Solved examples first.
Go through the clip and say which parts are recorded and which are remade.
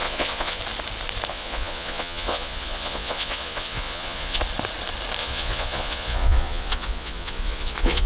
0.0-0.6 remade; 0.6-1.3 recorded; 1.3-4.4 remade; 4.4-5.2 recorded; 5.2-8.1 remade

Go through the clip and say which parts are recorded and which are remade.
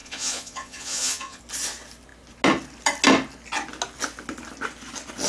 0.0-1.4 remade; 1.4-5.3 recorded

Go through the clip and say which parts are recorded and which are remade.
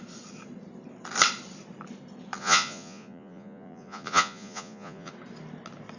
0.0-2.4 recorded; 2.4-5.1 remade; 5.1-6.0 recorded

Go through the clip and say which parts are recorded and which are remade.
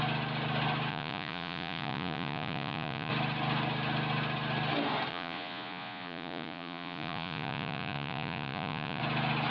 0.0-0.9 recorded; 0.9-3.1 remade; 3.1-5.1 recorded; 5.1-9.0 remade; 9.0-9.5 recorded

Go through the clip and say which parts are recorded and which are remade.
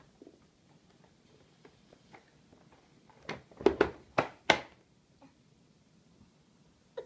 0.0-7.1 recorded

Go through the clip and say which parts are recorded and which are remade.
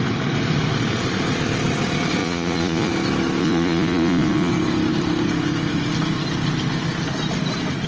0.0-2.2 recorded; 2.2-2.9 remade; 2.9-3.4 recorded; 3.4-4.5 remade; 4.5-7.9 recorded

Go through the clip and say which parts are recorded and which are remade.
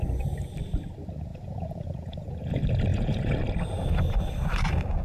0.0-1.3 recorded; 1.3-2.4 remade; 2.4-2.9 recorded; 2.9-3.4 remade; 3.4-5.0 recorded